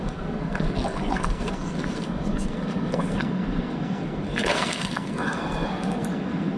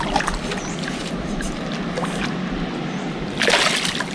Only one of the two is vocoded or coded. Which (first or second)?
first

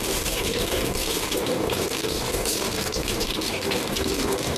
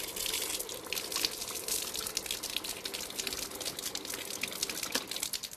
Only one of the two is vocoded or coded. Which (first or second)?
first